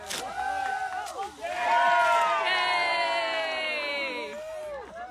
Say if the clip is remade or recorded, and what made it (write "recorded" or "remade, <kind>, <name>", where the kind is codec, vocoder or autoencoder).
recorded